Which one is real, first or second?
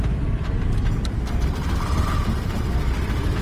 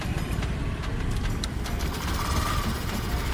first